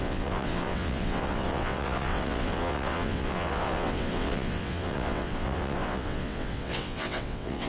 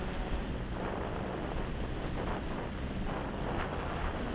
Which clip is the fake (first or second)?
first